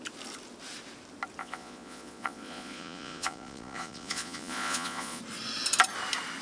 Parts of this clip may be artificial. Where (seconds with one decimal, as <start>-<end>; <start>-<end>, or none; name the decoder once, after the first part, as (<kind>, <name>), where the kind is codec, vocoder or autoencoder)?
1.4-5.2 (vocoder, Vocos)